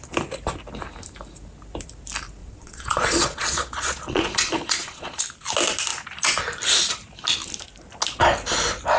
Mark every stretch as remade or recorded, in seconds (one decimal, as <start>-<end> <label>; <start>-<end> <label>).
0.0-2.4 recorded; 2.4-5.2 remade; 5.2-9.0 recorded